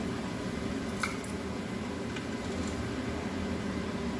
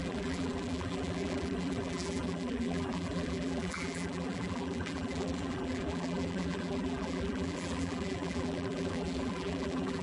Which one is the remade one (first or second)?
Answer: second